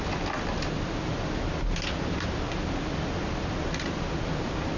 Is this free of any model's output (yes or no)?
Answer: yes